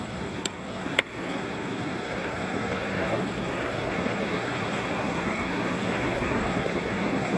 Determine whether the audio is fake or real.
fake